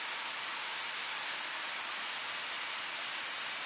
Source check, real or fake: real